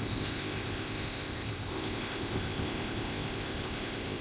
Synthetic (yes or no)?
yes